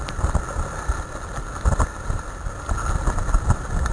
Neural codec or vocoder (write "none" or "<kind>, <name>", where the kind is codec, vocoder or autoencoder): none